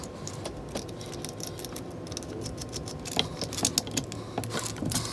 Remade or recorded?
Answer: recorded